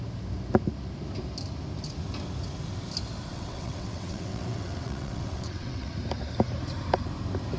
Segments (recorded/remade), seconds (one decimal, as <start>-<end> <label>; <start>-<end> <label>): 0.0-3.3 recorded; 3.3-5.9 remade; 5.9-7.6 recorded